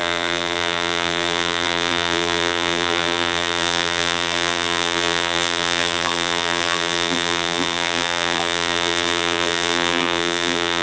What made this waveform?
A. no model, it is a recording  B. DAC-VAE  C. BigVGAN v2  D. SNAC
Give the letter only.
C